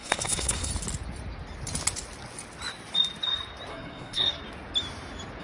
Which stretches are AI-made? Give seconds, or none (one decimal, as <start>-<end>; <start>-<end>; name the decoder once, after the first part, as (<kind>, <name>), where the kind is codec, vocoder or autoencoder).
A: 0.0-0.7 (codec, SNAC); 3.7-4.4